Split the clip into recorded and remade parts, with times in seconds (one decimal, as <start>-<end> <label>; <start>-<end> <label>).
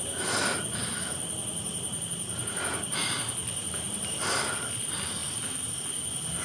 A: 0.0-0.9 recorded; 0.9-2.6 remade; 2.6-3.4 recorded; 3.4-4.5 remade; 4.5-6.4 recorded